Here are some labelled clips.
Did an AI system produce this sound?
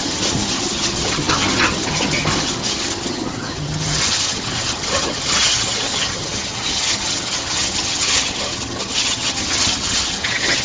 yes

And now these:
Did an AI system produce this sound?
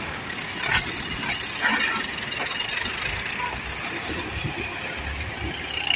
no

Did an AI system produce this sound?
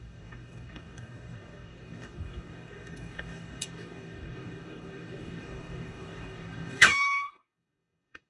yes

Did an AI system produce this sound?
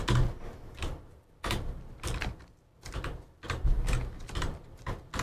no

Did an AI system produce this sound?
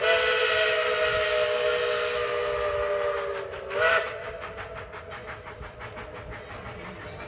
no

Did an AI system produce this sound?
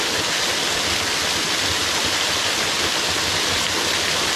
no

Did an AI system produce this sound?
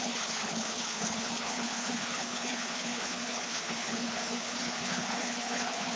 yes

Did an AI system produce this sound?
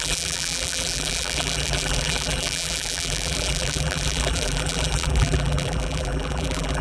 yes